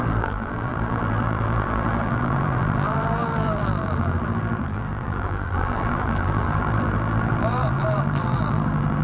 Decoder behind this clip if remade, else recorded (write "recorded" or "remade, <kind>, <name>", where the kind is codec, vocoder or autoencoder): remade, vocoder, BigVGAN v2